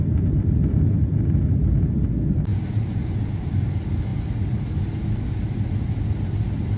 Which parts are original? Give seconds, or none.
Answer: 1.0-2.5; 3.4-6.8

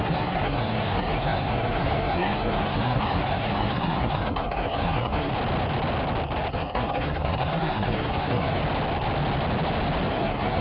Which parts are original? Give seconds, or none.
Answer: 5.3-6.5; 8.6-10.1

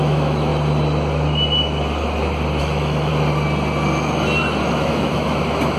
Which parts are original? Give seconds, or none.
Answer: 0.5-2.6; 3.1-4.7